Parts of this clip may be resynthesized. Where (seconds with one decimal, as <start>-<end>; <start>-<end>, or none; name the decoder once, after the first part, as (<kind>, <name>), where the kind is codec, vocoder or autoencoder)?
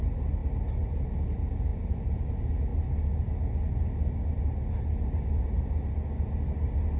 none